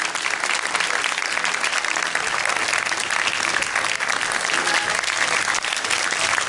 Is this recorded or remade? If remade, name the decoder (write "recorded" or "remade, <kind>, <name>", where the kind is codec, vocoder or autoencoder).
recorded